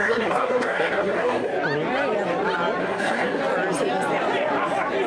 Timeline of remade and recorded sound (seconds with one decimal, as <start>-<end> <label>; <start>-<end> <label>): 0.0-1.5 remade; 1.5-2.8 recorded; 2.8-3.4 remade; 3.4-5.1 recorded